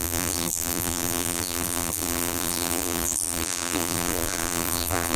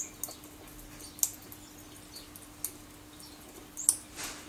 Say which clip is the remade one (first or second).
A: first